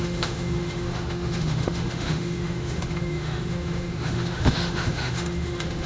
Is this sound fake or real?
fake